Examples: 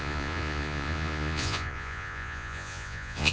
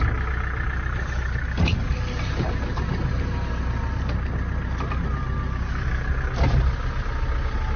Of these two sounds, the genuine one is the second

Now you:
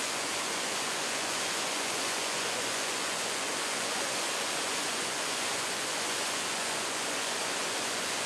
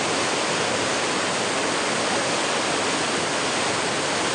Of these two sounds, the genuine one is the second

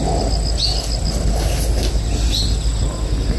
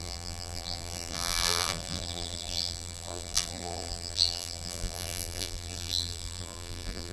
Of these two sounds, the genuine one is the first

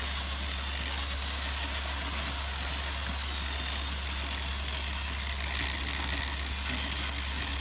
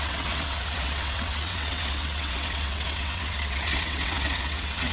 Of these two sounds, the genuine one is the first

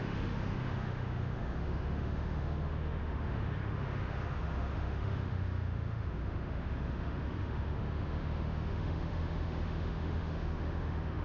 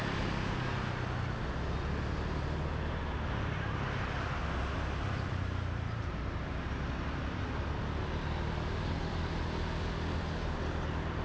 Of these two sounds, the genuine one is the second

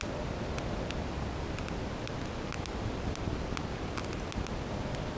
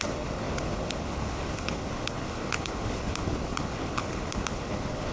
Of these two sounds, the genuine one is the first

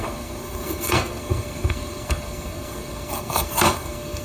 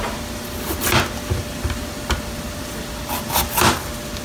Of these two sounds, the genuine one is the second